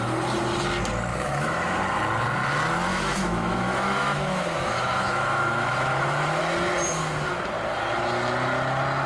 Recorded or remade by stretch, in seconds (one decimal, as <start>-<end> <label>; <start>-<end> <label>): 0.0-1.1 recorded; 1.1-1.8 remade; 1.8-2.9 recorded; 2.9-6.4 remade; 6.4-9.1 recorded